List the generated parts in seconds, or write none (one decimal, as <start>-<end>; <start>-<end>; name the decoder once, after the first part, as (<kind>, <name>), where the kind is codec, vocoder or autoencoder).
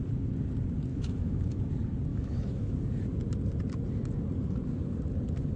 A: 0.9-1.7 (autoencoder, DAC-VAE); 2.1-2.7